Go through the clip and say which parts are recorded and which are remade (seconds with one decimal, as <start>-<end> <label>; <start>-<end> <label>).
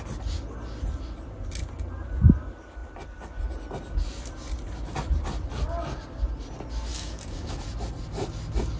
0.0-6.9 recorded; 6.9-7.6 remade; 7.6-8.8 recorded